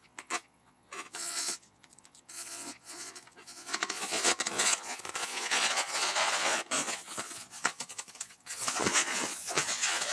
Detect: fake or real fake